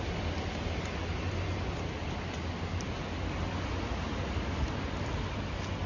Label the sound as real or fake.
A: real